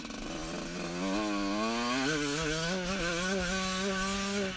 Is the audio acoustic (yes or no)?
yes